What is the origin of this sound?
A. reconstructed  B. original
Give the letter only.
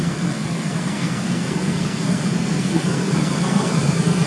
A